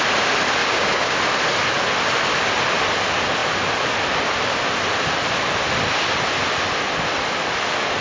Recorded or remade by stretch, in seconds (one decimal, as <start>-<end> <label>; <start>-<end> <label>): 0.0-0.6 recorded; 0.6-1.2 remade; 1.2-8.0 recorded